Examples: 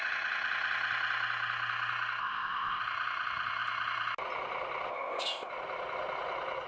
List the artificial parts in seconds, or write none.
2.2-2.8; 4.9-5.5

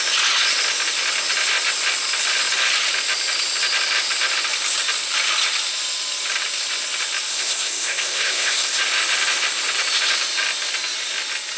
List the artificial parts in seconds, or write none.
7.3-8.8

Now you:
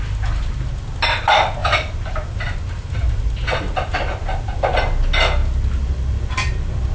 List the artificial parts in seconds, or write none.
none

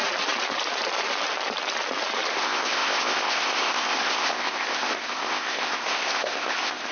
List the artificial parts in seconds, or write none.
2.3-6.9